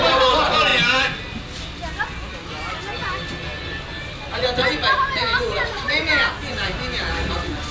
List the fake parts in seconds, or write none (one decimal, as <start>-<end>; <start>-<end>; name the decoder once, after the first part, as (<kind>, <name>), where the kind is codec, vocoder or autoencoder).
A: none